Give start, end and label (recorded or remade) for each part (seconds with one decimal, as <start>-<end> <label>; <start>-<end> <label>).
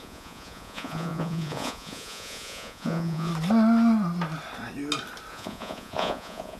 0.0-3.3 remade; 3.3-5.3 recorded; 5.3-6.6 remade